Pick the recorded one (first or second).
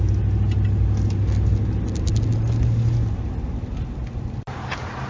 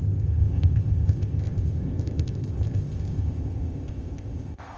first